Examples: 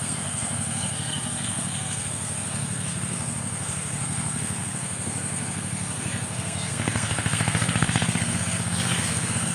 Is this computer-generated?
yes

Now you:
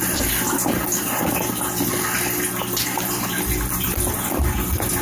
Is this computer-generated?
no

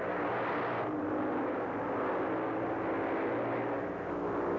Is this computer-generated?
no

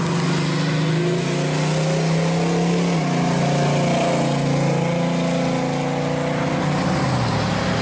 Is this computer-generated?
no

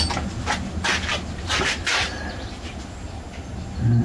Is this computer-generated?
no